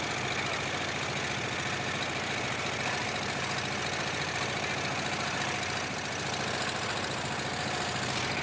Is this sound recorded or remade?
recorded